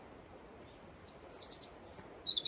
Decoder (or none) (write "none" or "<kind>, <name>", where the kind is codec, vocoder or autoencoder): none